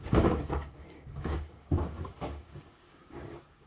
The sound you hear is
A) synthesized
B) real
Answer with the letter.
A